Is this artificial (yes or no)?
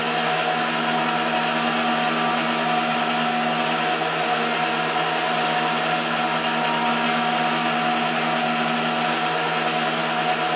no